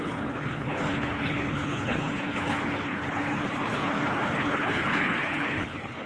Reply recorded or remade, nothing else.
remade